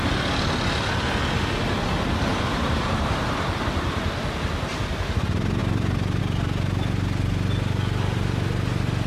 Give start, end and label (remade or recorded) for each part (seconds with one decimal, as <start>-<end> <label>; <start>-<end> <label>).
0.0-2.3 recorded; 2.3-3.6 remade; 3.6-5.6 recorded; 5.6-6.2 remade; 6.2-9.1 recorded